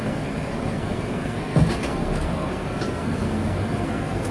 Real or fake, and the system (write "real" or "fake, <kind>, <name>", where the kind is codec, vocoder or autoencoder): fake, codec, SNAC